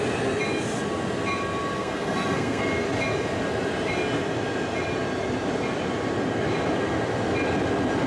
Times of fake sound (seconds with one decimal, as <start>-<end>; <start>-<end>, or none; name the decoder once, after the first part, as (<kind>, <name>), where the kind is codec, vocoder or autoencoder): 1.8-2.6 (codec, SNAC)